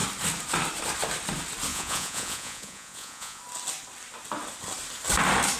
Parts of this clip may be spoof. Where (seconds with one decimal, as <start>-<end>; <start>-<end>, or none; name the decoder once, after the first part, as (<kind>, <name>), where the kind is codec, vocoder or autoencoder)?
1.7-3.4 (vocoder, Vocos)